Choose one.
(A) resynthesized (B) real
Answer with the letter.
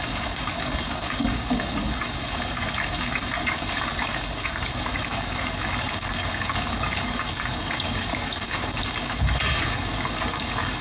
A